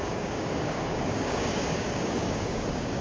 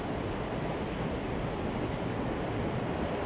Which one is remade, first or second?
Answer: first